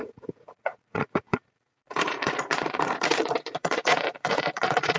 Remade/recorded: remade